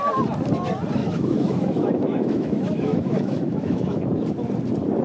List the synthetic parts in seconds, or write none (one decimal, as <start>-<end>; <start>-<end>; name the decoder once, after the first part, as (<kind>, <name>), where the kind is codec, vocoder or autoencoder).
1.0-4.0 (autoencoder, DAC-VAE)